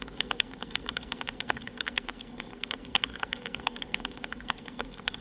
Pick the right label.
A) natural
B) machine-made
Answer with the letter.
B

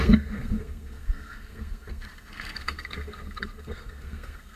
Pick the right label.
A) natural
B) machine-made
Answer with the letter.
B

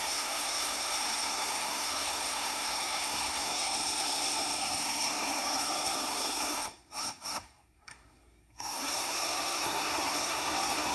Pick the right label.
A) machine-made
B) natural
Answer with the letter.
A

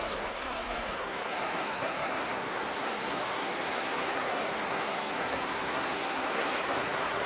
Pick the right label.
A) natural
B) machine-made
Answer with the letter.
B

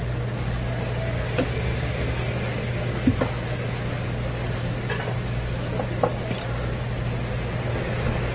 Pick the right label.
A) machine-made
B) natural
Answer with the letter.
B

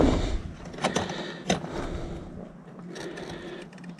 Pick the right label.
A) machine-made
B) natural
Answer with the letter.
B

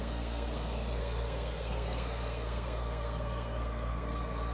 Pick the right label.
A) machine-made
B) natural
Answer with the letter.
A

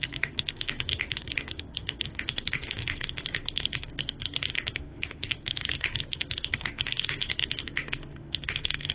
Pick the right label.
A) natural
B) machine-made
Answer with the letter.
B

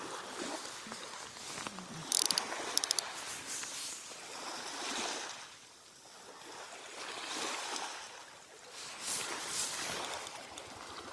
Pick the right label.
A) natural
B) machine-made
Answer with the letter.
A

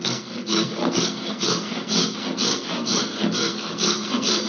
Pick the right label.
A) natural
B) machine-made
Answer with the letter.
B